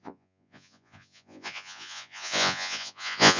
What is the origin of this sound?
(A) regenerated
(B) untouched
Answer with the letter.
A